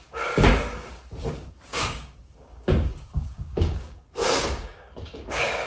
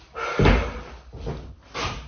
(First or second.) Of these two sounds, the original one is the second